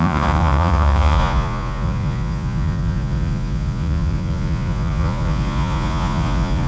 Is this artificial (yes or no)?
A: yes